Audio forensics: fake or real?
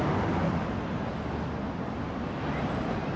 real